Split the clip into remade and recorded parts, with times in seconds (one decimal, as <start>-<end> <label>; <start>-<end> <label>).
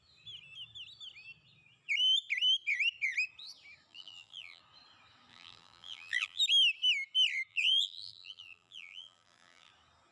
0.0-3.9 recorded; 3.9-4.6 remade; 4.6-5.3 recorded; 5.3-6.4 remade; 6.4-7.5 recorded; 7.5-9.7 remade; 9.7-10.1 recorded